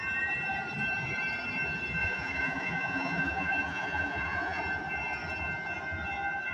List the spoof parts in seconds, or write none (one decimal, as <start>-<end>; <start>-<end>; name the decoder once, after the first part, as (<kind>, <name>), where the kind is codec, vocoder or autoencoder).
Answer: 2.0-4.6 (vocoder, Vocos)